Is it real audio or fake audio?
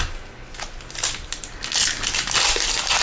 real